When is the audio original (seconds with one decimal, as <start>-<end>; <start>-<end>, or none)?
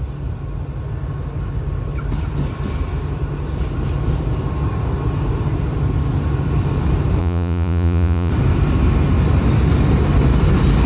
0.0-7.2; 8.3-10.9